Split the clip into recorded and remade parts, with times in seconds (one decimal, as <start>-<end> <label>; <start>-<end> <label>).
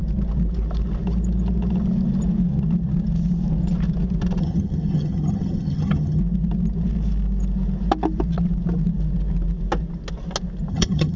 0.0-4.4 recorded; 4.4-6.2 remade; 6.2-10.7 recorded; 10.7-11.2 remade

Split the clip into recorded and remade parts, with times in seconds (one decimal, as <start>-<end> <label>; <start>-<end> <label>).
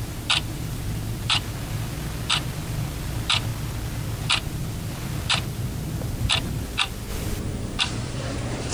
0.0-3.5 remade; 3.5-4.2 recorded; 4.2-5.7 remade; 5.7-6.2 recorded; 6.2-8.7 remade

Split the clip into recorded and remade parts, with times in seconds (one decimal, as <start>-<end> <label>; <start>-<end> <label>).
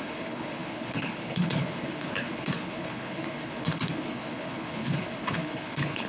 0.0-6.1 remade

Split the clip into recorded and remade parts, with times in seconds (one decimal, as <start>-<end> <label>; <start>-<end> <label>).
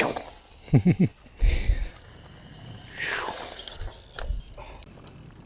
0.0-5.5 recorded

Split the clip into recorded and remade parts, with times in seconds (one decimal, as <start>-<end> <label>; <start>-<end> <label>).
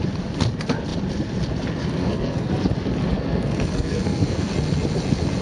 0.0-2.0 recorded; 2.0-2.7 remade; 2.7-3.1 recorded; 3.1-4.5 remade; 4.5-5.4 recorded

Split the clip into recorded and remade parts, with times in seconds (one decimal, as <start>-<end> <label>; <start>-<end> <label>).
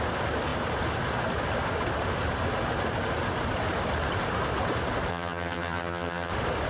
0.0-5.1 recorded; 5.1-6.3 remade; 6.3-6.7 recorded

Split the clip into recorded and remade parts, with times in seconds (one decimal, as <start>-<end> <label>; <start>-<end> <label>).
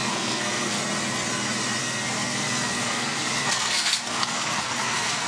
0.0-0.8 remade; 0.8-1.8 recorded; 1.8-5.3 remade